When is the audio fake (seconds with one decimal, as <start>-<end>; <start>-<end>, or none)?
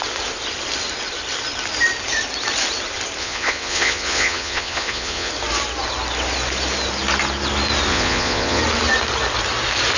3.2-5.3; 7.9-8.6